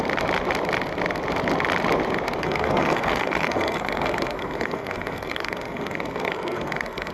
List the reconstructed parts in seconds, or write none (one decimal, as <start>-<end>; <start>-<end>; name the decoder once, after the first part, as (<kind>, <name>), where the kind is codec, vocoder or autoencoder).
2.4-7.1 (codec, SNAC)